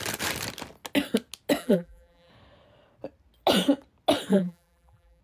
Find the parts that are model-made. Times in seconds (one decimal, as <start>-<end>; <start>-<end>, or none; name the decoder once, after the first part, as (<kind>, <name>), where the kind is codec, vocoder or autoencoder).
1.6-2.3 (vocoder, BigVGAN v2); 4.3-5.2